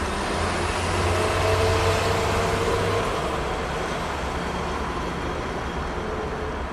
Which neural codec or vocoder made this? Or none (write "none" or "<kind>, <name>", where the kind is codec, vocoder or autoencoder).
none